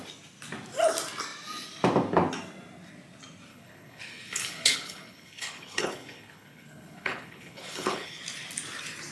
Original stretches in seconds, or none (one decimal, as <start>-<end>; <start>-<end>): 0.0-3.5; 8.2-9.1